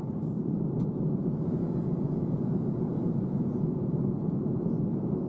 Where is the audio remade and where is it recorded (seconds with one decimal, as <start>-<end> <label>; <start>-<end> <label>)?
0.0-1.2 recorded; 1.2-4.4 remade; 4.4-5.3 recorded